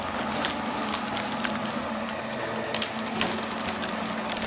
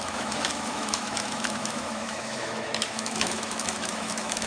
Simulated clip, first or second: second